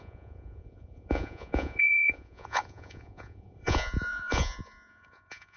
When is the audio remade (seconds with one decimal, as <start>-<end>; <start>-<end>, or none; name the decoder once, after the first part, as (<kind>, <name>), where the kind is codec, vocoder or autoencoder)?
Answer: 0.0-5.6 (vocoder, Vocos)